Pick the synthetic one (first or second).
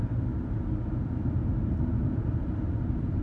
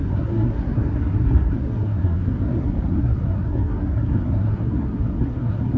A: second